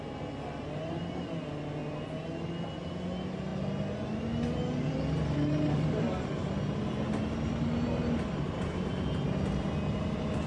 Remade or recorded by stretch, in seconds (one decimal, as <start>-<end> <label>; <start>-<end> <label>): 0.0-10.5 recorded